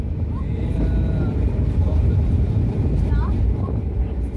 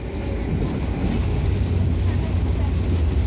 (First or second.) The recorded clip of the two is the second